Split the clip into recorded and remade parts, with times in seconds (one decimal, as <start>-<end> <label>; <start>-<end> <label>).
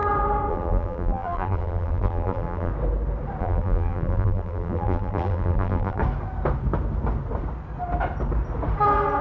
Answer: 0.0-0.5 recorded; 0.5-2.7 remade; 2.7-3.4 recorded; 3.4-6.0 remade; 6.0-9.2 recorded